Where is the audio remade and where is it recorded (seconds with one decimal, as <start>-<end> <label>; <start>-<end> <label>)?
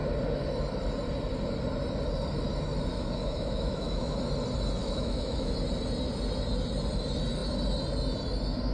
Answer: 0.0-2.9 recorded; 2.9-4.2 remade; 4.2-4.8 recorded; 4.8-5.5 remade; 5.5-8.7 recorded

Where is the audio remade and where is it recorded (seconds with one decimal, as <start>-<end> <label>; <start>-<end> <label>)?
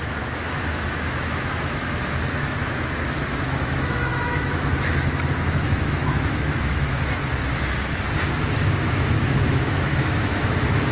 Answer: 0.0-7.2 remade; 7.2-8.2 recorded; 8.2-10.9 remade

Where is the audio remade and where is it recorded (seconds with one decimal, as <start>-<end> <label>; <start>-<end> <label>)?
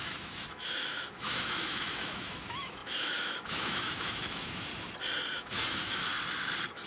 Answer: 0.0-4.7 remade; 4.7-5.4 recorded; 5.4-6.1 remade; 6.1-6.9 recorded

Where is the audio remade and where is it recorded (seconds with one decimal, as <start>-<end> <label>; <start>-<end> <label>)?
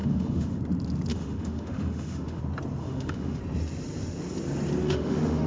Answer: 0.0-0.6 remade; 0.6-1.1 recorded; 1.1-2.4 remade; 2.4-2.8 recorded; 2.8-3.4 remade; 3.4-4.8 recorded; 4.8-5.5 remade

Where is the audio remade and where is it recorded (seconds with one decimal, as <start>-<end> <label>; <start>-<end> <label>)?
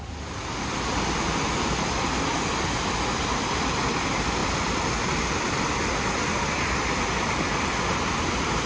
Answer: 0.0-8.7 recorded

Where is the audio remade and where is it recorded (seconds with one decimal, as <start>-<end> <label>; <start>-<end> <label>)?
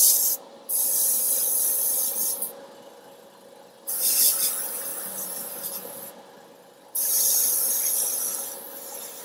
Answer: 0.0-9.2 recorded